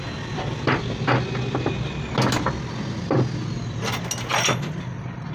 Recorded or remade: recorded